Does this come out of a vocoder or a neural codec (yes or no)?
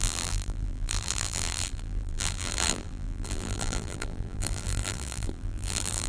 yes